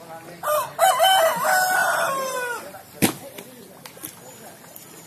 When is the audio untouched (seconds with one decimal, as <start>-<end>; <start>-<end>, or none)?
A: 0.0-5.1